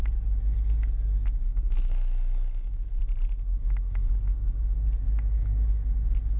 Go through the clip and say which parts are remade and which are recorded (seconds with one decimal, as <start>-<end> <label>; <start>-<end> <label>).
0.0-1.5 recorded; 1.5-3.0 remade; 3.0-6.4 recorded